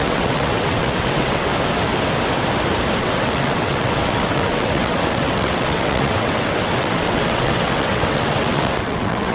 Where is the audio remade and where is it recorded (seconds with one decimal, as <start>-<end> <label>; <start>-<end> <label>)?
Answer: 0.0-1.5 remade; 1.5-3.0 recorded; 3.0-9.3 remade